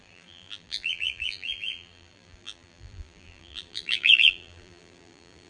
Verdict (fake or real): fake